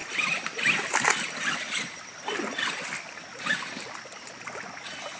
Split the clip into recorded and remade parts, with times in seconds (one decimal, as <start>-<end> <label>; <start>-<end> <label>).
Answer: 0.0-5.2 recorded